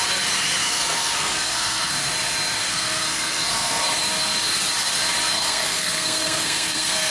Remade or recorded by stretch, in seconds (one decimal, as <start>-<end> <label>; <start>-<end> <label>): 0.0-0.6 recorded; 0.6-1.9 remade; 1.9-2.6 recorded; 2.6-3.8 remade; 3.8-5.3 recorded; 5.3-7.1 remade